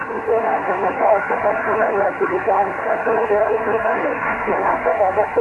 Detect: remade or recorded remade